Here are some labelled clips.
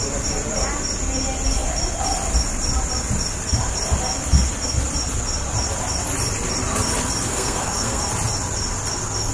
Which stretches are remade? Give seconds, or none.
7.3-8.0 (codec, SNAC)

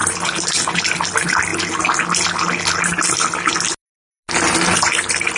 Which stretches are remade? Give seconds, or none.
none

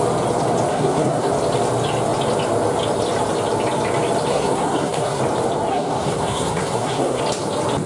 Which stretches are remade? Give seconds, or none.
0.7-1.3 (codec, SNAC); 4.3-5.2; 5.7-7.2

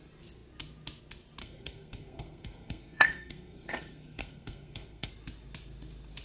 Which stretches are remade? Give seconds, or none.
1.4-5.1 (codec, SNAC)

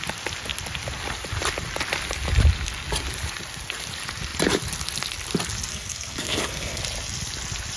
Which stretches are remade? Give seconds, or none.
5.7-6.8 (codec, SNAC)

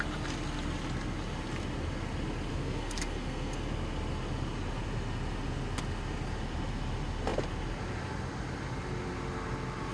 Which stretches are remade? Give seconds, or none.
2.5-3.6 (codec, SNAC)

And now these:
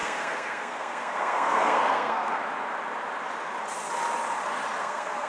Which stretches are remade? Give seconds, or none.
0.0-2.4 (codec, SNAC); 4.8-5.3